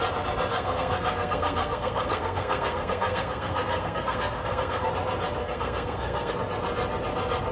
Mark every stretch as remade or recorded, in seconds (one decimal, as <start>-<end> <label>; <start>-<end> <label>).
0.0-0.5 recorded; 0.5-4.9 remade; 4.9-5.4 recorded; 5.4-6.3 remade; 6.3-7.5 recorded